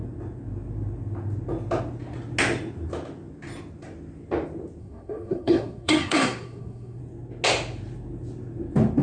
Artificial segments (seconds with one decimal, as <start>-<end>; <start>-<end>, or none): 4.8-7.0